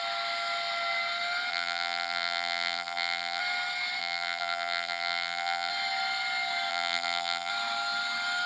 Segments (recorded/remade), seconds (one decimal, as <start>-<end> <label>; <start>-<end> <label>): 0.0-1.5 recorded; 1.5-3.4 remade; 3.4-4.0 recorded; 4.0-5.7 remade; 5.7-6.7 recorded; 6.7-7.5 remade; 7.5-8.5 recorded